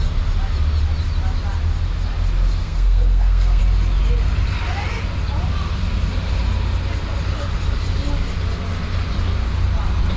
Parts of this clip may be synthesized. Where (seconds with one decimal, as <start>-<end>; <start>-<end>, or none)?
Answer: 2.6-3.6